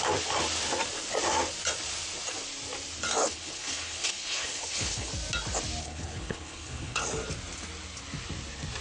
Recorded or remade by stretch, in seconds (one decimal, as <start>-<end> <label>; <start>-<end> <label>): 0.0-3.2 recorded; 3.2-5.1 remade; 5.1-5.8 recorded; 5.8-7.0 remade; 7.0-8.8 recorded